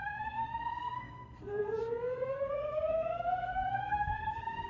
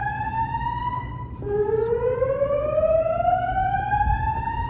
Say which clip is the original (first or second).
second